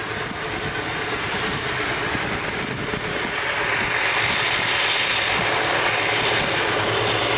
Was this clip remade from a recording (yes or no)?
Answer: no